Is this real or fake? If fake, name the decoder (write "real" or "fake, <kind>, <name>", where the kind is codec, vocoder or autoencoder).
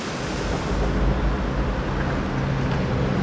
real